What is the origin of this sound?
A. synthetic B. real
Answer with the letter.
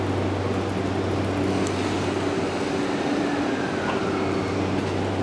B